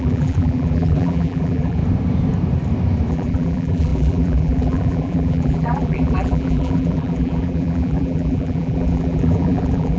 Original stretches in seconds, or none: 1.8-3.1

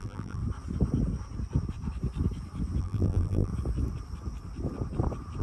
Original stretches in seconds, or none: 0.4-2.8; 3.5-5.4

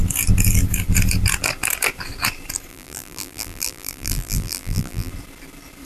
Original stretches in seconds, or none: 0.0-2.7; 5.1-5.9

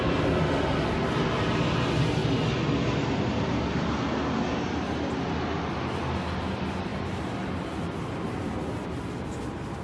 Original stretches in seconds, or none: 0.0-9.8